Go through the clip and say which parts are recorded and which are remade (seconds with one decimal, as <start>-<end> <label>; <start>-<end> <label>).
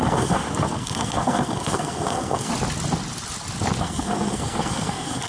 0.0-2.5 remade; 2.5-3.8 recorded; 3.8-5.3 remade